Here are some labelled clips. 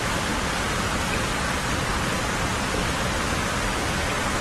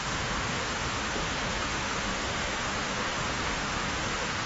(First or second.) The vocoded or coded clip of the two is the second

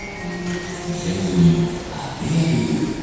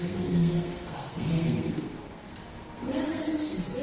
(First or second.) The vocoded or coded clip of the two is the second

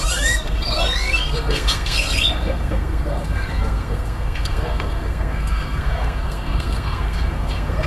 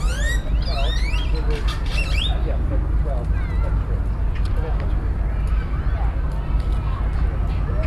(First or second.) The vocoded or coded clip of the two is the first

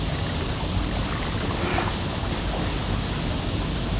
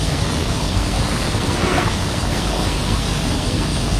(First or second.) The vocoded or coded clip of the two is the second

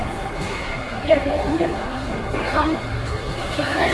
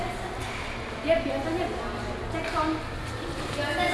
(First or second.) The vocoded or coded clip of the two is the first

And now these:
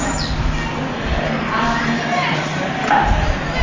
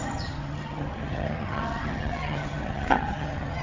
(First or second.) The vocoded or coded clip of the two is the second